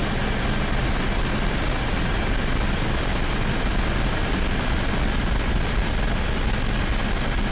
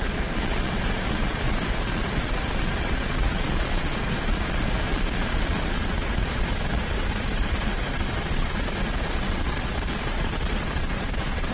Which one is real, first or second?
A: first